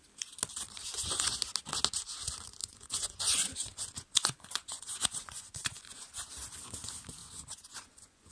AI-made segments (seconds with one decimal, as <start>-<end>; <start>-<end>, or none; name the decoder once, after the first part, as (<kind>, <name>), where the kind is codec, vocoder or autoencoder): 0.8-1.4 (vocoder, Vocos); 2.6-6.3; 7.2-8.3